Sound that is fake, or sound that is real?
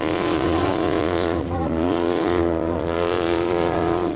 fake